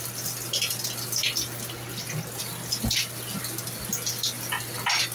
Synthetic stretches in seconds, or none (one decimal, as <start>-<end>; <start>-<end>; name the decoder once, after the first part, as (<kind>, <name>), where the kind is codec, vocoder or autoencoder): none